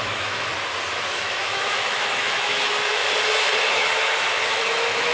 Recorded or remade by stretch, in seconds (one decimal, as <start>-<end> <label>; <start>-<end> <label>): 0.0-0.5 remade; 0.5-1.1 recorded; 1.1-3.0 remade; 3.0-3.7 recorded; 3.7-5.1 remade